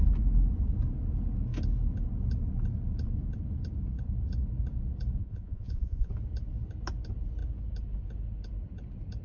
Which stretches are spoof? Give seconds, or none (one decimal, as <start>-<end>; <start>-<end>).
5.2-6.1